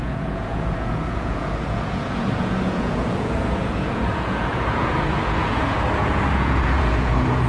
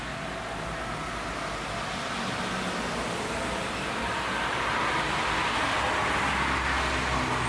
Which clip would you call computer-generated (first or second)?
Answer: first